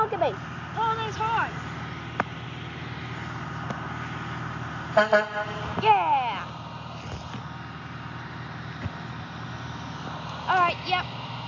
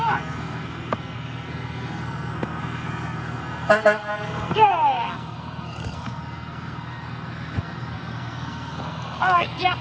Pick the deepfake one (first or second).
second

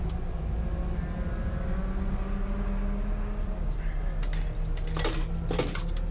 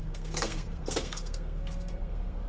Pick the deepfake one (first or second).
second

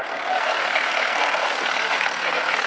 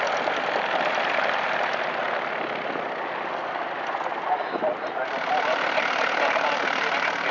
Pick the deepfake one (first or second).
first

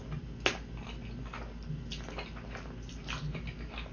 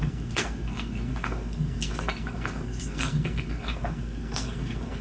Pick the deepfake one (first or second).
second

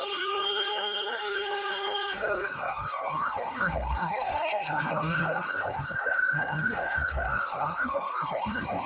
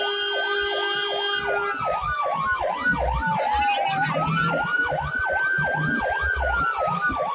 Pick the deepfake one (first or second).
first